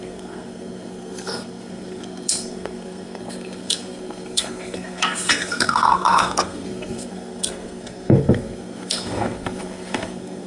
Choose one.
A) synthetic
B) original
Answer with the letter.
A